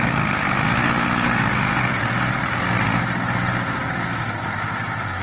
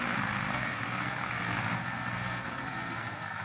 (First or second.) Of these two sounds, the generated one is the second